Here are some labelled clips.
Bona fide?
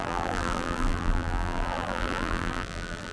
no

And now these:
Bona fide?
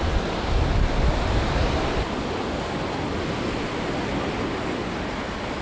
yes